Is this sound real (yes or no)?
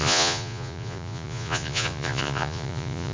no